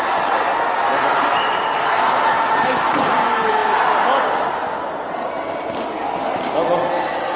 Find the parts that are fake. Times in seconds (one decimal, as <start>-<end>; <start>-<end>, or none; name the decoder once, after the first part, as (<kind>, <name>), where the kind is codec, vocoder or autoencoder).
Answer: none